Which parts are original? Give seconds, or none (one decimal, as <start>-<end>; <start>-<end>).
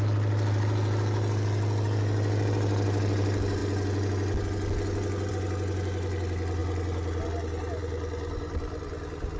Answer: 0.0-9.4